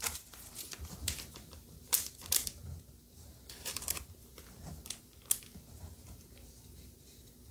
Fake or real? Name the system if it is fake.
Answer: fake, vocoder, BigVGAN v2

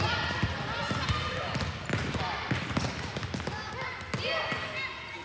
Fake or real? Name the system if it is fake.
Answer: real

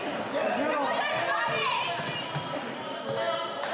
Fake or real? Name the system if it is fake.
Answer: real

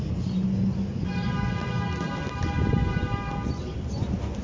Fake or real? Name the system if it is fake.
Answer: real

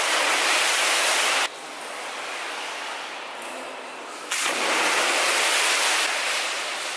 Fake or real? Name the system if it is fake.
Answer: real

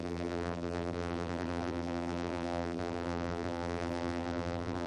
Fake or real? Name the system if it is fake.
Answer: fake, vocoder, BigVGAN v2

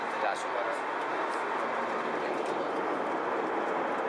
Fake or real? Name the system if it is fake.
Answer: real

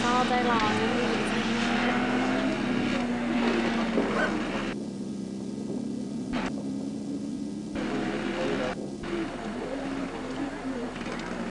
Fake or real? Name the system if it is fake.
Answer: real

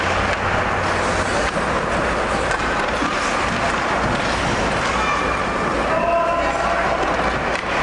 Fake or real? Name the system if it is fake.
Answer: real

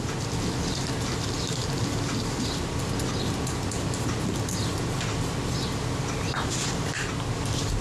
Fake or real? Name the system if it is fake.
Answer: real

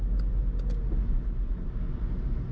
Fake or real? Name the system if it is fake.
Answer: real